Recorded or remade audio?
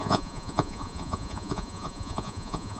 remade